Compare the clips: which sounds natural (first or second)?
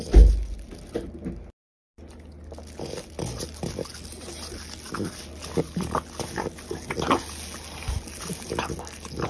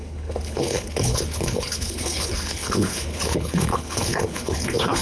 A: first